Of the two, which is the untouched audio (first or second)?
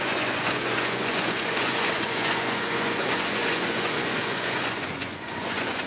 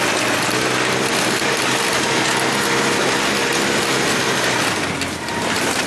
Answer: second